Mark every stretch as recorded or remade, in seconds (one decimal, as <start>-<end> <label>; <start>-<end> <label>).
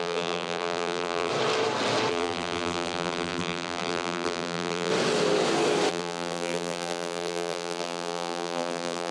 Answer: 0.0-1.3 remade; 1.3-2.1 recorded; 2.1-4.9 remade; 4.9-5.9 recorded; 5.9-9.1 remade